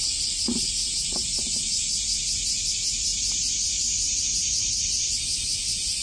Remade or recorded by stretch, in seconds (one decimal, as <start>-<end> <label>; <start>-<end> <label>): 0.0-6.0 recorded

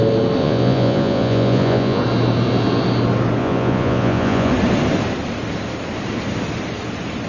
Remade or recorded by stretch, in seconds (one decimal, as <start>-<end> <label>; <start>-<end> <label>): 0.0-0.4 recorded; 0.4-2.0 remade; 2.0-3.4 recorded; 3.4-4.5 remade; 4.5-7.3 recorded

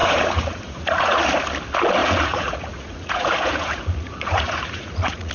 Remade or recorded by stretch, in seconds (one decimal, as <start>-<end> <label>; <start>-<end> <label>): 0.0-1.2 remade; 1.2-2.0 recorded; 2.0-5.3 remade

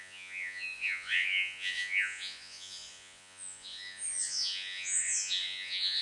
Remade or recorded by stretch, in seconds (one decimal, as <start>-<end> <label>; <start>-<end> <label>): 0.0-6.0 remade

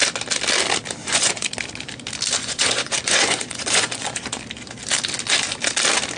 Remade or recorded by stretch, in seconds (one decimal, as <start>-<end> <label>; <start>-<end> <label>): 0.0-1.0 recorded; 1.0-1.5 remade; 1.5-2.4 recorded; 2.4-4.4 remade; 4.4-6.2 recorded

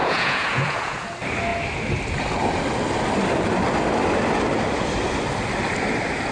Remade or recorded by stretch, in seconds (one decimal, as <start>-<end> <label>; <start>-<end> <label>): 0.0-1.1 remade; 1.1-6.3 recorded